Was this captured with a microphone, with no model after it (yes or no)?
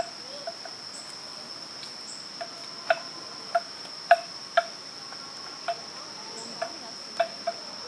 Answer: yes